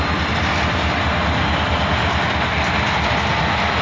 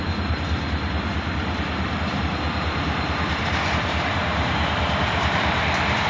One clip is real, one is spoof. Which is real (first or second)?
first